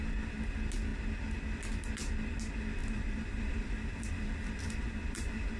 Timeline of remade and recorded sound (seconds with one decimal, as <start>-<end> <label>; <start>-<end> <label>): 0.0-2.8 recorded; 2.8-5.6 remade